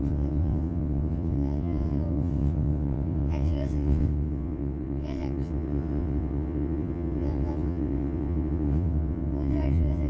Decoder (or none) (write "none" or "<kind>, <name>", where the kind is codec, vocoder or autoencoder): vocoder, WaveNeXt